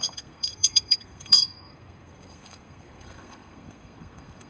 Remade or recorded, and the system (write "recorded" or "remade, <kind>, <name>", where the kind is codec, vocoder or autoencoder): remade, codec, SNAC